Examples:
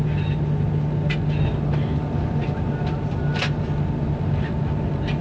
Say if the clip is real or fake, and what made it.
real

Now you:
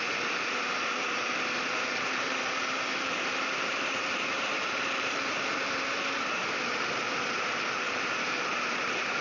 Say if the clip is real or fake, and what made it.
fake, vocoder, BigVGAN v2